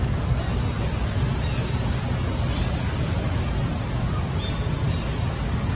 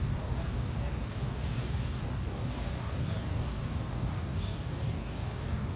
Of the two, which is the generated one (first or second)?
second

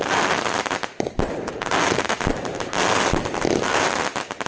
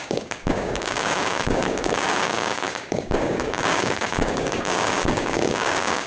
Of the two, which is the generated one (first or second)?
second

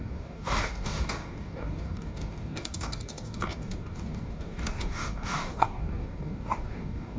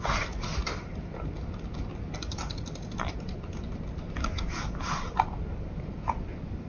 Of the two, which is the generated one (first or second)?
first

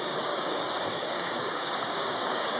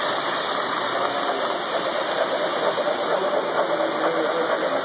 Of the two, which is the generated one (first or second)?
first